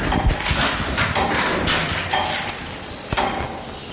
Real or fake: real